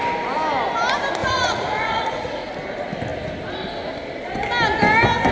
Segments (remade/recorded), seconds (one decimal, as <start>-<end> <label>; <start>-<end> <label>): 0.0-1.2 recorded; 1.2-2.5 remade; 2.5-5.3 recorded